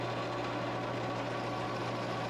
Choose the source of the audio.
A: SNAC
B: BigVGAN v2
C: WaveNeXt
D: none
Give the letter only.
D